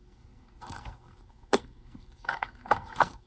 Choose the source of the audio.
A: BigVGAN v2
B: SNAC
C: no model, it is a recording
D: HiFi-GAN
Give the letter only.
B